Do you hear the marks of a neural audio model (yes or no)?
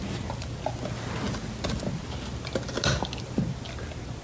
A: no